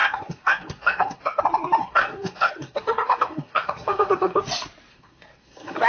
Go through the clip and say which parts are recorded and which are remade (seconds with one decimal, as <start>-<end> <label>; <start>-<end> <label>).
0.0-1.4 remade; 1.4-1.8 recorded; 1.8-4.4 remade; 4.4-4.9 recorded; 4.9-5.9 remade